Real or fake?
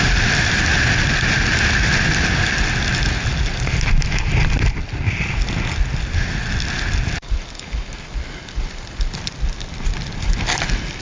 real